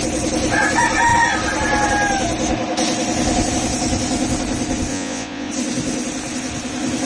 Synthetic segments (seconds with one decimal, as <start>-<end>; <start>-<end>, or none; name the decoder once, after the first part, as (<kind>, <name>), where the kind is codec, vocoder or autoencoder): 4.9-5.5 (vocoder, Vocos)